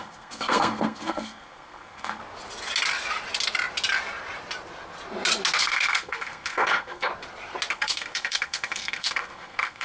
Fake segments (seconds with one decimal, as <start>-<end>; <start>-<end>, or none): 0.0-2.2; 5.6-7.1; 7.7-9.8